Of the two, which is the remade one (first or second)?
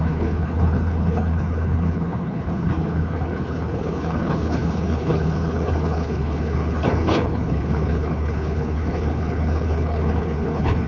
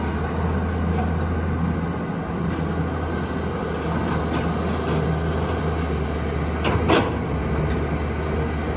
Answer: first